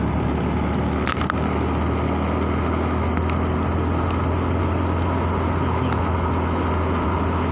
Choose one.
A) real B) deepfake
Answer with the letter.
A